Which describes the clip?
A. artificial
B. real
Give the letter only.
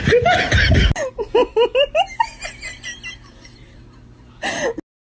B